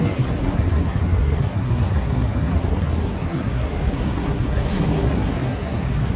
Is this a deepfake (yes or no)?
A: yes